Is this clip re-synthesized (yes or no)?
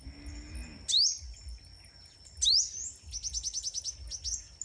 no